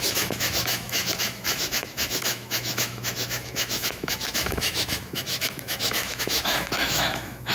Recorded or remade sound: remade